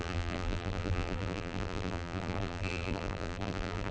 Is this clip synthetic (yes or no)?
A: yes